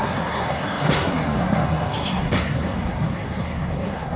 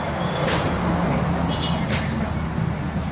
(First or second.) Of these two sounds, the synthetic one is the first